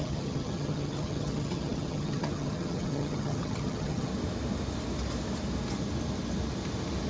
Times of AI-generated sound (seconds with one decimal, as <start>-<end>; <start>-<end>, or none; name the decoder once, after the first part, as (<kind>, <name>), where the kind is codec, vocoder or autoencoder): 0.0-4.1 (vocoder, HiFi-GAN)